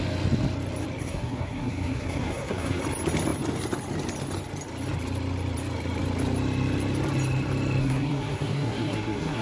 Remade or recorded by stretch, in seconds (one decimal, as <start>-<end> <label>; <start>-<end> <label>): 0.0-1.0 recorded; 1.0-2.8 remade; 2.8-7.8 recorded; 7.8-9.4 remade